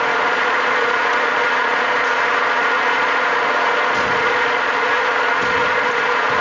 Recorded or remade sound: remade